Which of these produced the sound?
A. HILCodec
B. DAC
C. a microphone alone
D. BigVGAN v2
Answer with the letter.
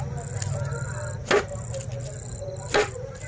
C